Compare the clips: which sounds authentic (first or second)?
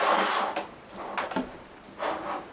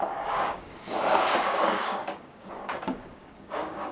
first